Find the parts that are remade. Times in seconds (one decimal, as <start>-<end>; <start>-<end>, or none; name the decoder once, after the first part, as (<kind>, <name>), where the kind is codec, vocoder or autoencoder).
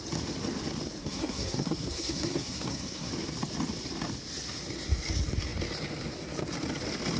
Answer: 1.0-3.1 (codec, SNAC)